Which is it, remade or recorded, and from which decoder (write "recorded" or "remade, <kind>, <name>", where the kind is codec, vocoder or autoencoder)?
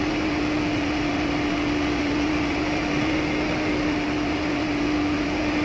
recorded